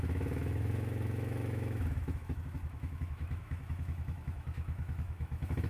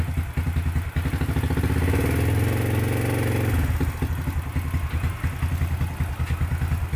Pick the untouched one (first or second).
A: second